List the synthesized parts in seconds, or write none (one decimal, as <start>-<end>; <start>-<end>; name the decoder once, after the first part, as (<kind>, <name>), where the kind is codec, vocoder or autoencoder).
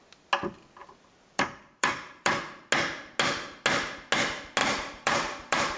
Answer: 0.8-2.4 (vocoder, BigVGAN v2); 4.6-5.8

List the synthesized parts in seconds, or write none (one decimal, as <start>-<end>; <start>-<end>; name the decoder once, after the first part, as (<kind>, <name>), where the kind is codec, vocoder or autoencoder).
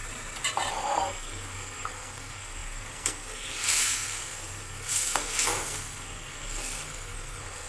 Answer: 0.7-7.7 (codec, SNAC)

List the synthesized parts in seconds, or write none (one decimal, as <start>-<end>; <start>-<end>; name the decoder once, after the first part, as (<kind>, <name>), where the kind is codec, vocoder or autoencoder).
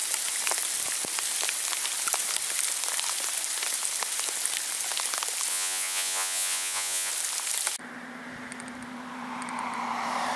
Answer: 5.5-7.1 (vocoder, Vocos)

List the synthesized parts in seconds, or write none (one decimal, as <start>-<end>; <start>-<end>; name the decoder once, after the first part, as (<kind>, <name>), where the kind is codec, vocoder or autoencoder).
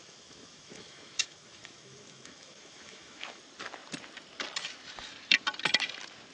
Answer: 0.0-3.4 (autoencoder, DAC-VAE)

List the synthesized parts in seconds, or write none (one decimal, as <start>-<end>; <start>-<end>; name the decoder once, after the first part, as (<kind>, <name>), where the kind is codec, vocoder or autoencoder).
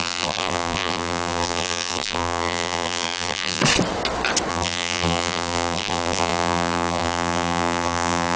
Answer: 0.0-3.6 (vocoder, BigVGAN v2); 4.5-8.4